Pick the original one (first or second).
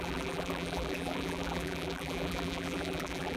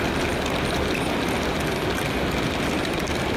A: second